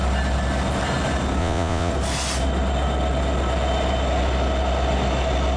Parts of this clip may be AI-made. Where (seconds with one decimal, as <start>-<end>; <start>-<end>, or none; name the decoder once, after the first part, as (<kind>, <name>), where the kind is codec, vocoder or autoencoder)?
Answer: 1.4-1.9 (vocoder, Vocos)